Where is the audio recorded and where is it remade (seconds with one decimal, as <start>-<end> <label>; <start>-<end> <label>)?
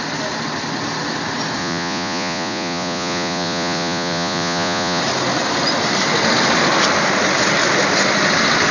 0.0-1.6 recorded; 1.6-5.0 remade; 5.0-8.7 recorded